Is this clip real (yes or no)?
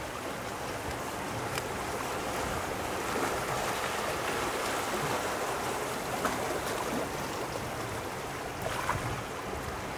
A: yes